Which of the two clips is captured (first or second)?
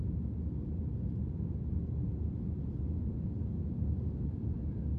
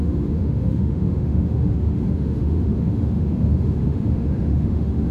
first